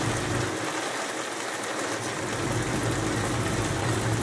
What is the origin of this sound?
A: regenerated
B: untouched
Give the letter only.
B